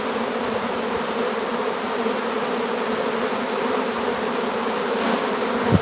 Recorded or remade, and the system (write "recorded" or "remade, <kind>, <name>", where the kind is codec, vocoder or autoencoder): recorded